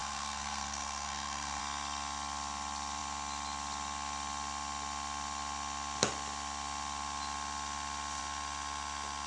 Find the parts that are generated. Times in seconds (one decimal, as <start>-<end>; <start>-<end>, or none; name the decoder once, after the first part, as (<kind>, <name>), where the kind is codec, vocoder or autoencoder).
0.0-1.6 (codec, SNAC)